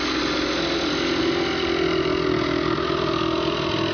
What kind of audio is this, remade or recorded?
recorded